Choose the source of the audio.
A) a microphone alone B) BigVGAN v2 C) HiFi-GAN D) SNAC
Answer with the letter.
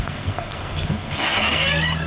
D